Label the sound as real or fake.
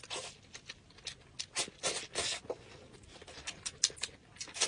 real